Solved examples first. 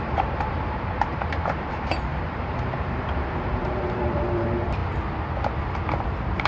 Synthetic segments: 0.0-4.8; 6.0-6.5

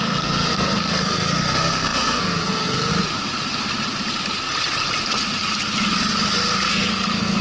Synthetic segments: 0.0-2.9; 6.7-7.4

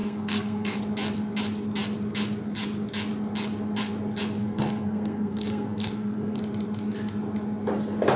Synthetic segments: 0.0-0.8; 4.4-6.4

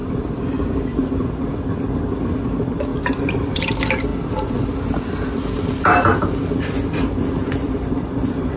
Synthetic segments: 0.0-0.8; 2.9-3.6; 7.4-8.6